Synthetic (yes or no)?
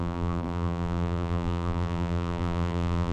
yes